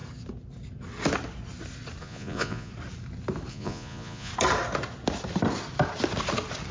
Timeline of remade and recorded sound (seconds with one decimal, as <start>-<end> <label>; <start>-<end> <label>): 0.0-2.0 recorded; 2.0-2.7 remade; 2.7-3.5 recorded; 3.5-4.3 remade; 4.3-6.7 recorded